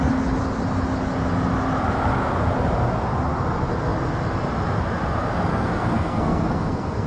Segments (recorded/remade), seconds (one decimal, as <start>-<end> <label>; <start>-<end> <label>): 0.0-5.5 recorded; 5.5-7.1 remade